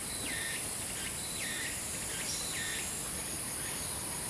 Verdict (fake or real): real